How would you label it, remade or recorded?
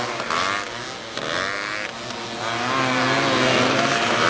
recorded